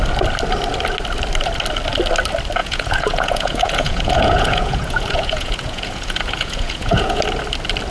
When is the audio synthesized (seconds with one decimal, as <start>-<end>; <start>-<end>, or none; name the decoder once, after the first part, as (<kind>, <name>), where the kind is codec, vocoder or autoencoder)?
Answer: 2.6-7.2 (vocoder, Vocos)